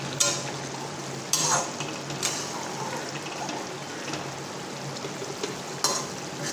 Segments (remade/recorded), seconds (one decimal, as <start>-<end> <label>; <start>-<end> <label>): 0.0-6.5 recorded